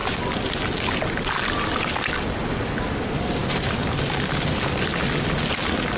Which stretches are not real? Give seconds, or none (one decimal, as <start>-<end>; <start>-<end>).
none